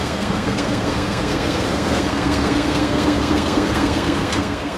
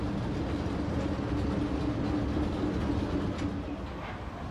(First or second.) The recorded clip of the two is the second